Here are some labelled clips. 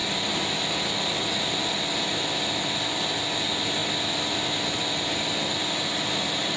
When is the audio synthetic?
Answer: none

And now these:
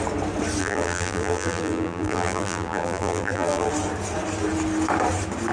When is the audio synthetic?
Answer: 0.6-3.7 (vocoder, BigVGAN v2)